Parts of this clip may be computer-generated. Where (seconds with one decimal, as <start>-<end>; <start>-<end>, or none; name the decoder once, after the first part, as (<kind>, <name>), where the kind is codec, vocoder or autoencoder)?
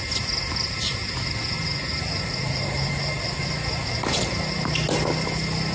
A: 1.9-4.5 (vocoder, BigVGAN v2)